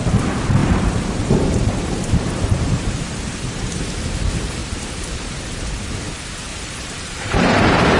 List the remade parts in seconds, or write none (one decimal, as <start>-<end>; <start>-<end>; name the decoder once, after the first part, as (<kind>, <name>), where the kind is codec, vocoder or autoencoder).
0.6-3.8 (vocoder, BigVGAN v2); 4.6-6.0; 6.5-7.6